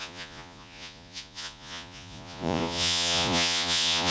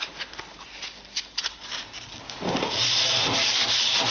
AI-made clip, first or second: first